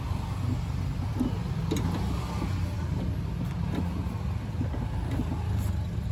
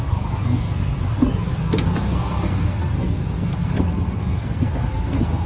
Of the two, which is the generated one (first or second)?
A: second